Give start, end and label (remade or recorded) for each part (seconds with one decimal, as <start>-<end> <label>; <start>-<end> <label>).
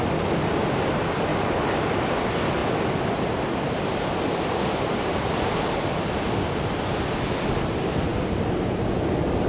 0.0-9.5 recorded